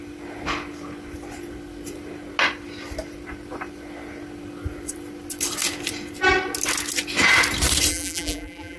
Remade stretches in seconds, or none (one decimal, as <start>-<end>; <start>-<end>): 7.9-8.8